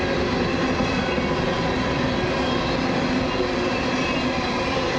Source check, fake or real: real